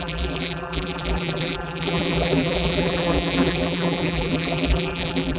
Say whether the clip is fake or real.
fake